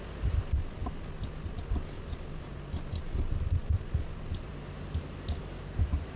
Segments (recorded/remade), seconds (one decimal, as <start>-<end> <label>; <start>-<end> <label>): 0.0-6.2 recorded